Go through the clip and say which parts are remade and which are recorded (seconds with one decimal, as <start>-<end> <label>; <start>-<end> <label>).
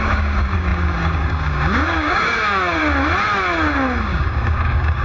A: 0.0-2.8 remade; 2.8-4.0 recorded; 4.0-5.0 remade